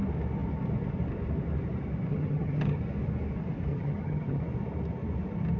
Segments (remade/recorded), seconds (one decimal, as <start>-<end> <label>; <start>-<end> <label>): 0.0-2.1 recorded; 2.1-2.8 remade; 2.8-3.7 recorded; 3.7-4.4 remade; 4.4-5.6 recorded